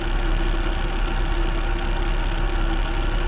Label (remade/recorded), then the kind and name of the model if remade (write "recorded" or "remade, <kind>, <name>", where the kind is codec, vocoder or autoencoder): recorded